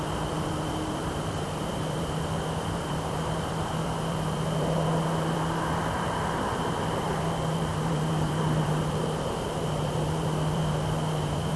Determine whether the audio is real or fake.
fake